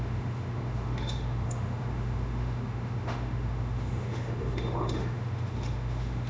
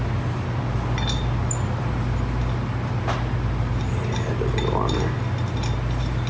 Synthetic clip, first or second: first